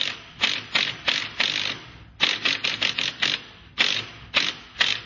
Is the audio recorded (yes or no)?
yes